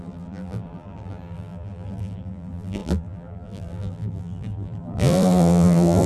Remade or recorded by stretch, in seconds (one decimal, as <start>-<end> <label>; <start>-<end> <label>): 0.0-6.1 remade